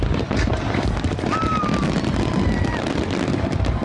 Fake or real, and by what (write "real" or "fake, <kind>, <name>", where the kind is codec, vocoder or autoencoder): real